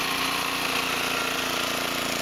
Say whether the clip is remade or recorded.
recorded